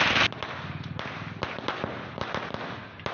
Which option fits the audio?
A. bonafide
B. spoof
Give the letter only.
A